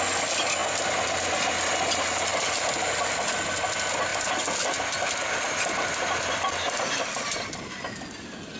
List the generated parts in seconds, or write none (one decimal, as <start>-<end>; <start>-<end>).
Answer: none